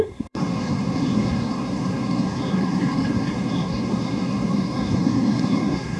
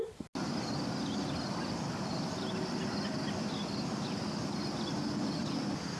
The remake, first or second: first